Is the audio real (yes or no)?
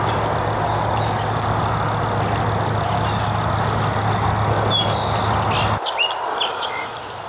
yes